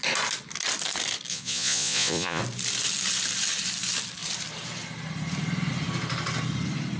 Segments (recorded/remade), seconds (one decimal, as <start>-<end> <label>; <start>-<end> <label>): 0.0-1.3 recorded; 1.3-2.4 remade; 2.4-7.0 recorded